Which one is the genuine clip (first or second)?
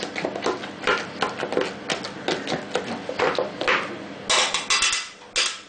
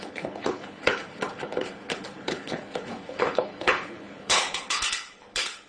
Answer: first